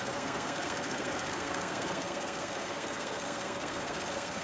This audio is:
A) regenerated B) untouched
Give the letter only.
A